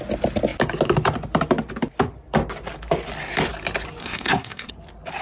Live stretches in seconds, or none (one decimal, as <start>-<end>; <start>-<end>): 0.0-4.0; 4.7-5.2